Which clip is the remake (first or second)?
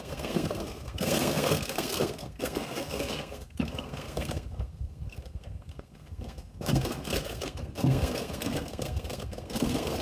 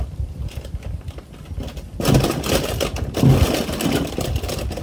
first